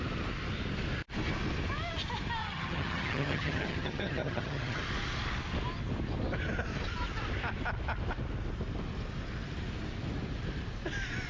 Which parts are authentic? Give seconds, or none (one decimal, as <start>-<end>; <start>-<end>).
0.0-2.4; 4.8-11.3